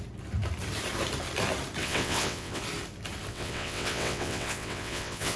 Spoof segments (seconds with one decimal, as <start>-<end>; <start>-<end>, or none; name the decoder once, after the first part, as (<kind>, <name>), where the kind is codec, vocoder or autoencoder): 1.8-2.6 (vocoder, WaveNeXt); 3.3-5.4